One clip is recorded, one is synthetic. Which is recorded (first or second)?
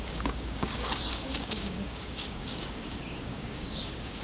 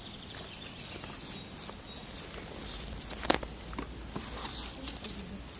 second